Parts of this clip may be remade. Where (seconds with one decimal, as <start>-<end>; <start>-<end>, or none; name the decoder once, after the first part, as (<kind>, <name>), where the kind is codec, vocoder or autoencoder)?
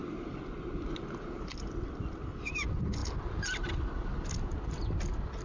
none